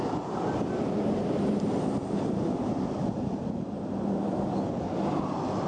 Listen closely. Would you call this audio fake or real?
real